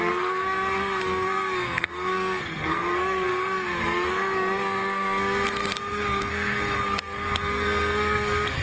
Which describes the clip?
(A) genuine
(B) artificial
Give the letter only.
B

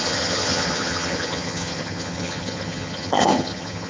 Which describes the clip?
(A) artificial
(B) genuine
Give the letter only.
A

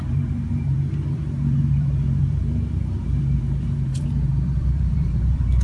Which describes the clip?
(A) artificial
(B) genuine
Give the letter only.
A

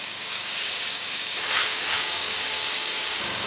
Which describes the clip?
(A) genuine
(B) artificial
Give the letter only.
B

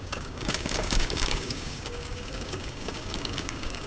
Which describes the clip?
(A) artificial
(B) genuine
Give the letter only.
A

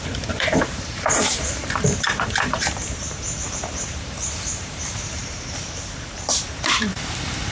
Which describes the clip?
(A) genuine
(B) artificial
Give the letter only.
B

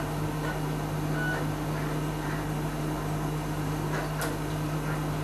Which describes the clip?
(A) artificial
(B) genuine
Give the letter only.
B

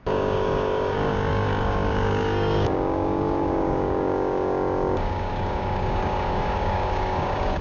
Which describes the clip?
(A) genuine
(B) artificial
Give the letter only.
B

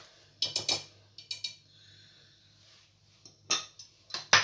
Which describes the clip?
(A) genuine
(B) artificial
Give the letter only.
A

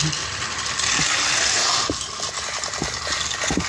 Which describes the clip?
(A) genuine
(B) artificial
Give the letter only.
A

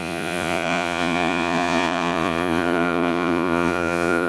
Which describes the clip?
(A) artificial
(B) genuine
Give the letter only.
A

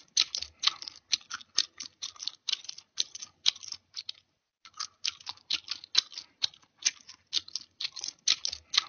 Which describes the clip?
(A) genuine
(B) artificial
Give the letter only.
A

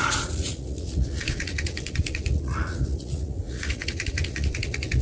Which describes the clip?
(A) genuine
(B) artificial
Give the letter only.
B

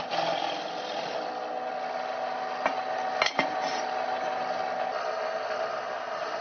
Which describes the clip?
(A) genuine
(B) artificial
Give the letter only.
A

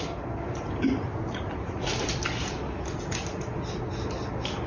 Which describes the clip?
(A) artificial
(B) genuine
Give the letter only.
B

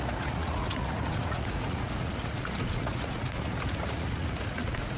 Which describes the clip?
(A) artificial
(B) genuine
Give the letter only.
A